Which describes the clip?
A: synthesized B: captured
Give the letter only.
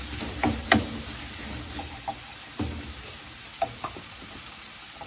B